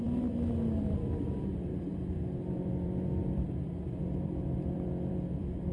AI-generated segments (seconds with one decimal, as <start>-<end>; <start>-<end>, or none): 0.0-5.7